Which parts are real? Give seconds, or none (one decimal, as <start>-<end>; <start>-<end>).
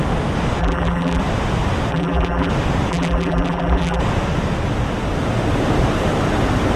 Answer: 0.0-0.6; 1.2-1.9; 2.5-2.9; 4.0-6.8